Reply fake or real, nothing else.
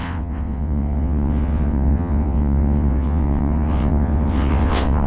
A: fake